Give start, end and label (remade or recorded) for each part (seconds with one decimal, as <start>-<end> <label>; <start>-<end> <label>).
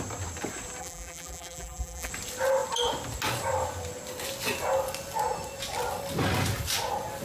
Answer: 0.0-0.8 recorded; 0.8-2.1 remade; 2.1-7.2 recorded